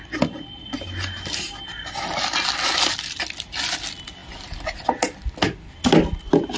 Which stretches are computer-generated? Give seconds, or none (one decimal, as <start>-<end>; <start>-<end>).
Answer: none

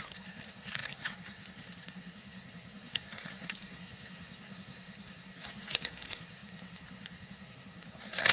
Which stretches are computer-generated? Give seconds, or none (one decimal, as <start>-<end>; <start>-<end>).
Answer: 0.0-8.3